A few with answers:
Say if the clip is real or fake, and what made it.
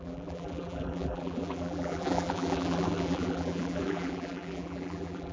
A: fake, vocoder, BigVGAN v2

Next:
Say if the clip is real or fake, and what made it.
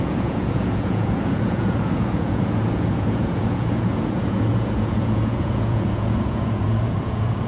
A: fake, vocoder, Vocos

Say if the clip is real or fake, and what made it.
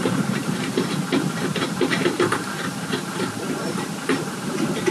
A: fake, vocoder, BigVGAN v2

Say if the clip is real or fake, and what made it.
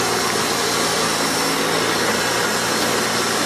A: real